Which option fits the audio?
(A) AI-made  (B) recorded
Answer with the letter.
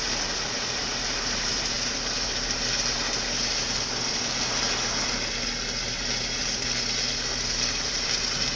B